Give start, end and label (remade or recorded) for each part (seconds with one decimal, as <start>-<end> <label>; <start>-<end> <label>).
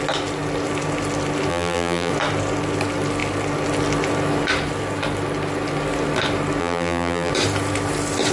0.0-1.5 recorded; 1.5-2.1 remade; 2.1-6.6 recorded; 6.6-7.3 remade; 7.3-8.3 recorded